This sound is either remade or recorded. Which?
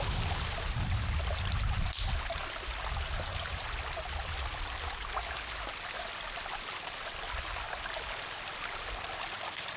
recorded